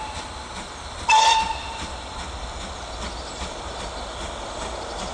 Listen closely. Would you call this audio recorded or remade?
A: recorded